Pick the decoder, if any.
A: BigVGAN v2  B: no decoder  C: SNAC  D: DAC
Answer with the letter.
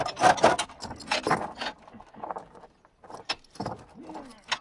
B